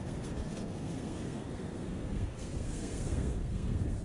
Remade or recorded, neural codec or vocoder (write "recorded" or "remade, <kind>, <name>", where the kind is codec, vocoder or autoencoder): remade, codec, SNAC